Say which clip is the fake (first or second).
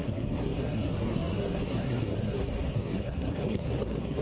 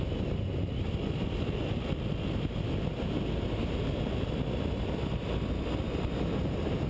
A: first